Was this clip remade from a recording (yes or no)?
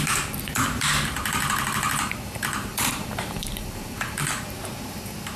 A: yes